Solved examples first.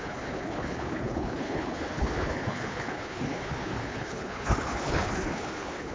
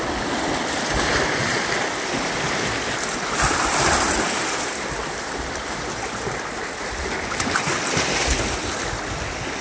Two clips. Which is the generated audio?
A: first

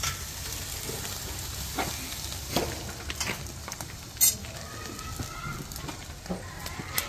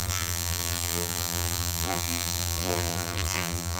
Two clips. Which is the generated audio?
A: second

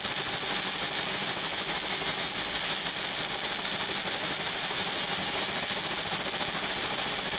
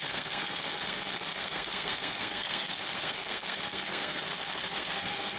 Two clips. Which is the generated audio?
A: second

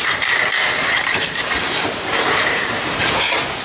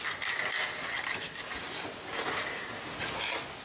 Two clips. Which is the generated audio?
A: first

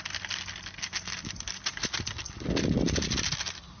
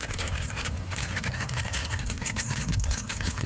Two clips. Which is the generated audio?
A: second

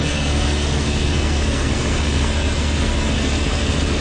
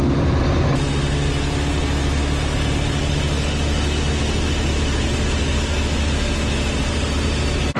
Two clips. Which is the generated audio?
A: first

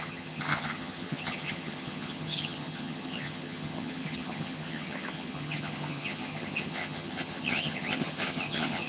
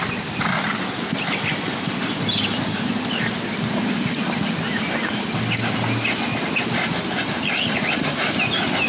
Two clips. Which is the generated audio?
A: first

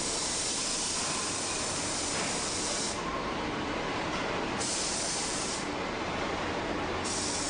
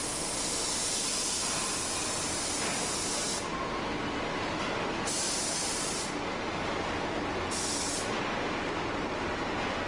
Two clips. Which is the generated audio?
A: first